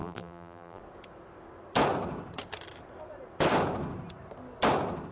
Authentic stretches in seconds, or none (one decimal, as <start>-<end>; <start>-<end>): 0.8-5.1